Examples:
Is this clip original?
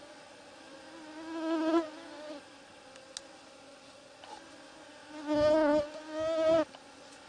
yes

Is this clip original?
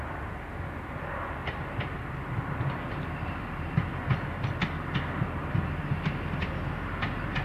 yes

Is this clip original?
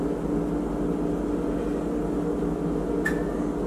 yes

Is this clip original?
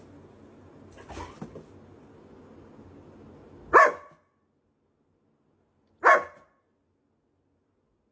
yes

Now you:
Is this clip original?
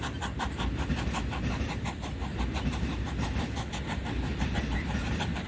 yes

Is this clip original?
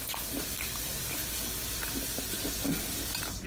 yes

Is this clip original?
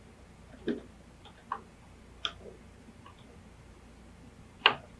yes